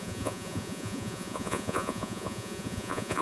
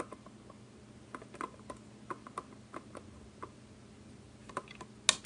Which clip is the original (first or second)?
second